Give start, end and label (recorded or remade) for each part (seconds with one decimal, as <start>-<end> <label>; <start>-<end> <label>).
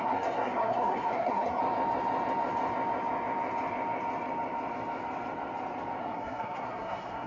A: 0.0-1.6 remade; 1.6-6.0 recorded; 6.0-7.3 remade